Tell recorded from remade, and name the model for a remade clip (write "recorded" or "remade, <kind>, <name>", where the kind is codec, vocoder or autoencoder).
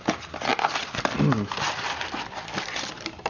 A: recorded